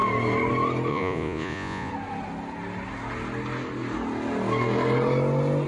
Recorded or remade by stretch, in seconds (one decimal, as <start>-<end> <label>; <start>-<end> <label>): 0.0-0.9 recorded; 0.9-1.9 remade; 1.9-5.7 recorded